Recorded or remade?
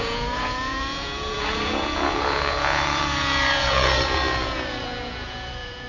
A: remade